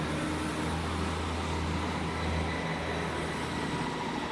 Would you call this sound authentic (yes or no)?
yes